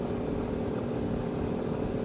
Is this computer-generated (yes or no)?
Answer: no